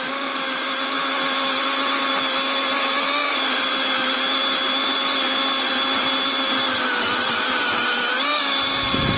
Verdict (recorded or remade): recorded